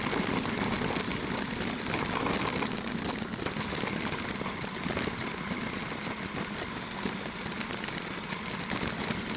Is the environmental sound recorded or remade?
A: recorded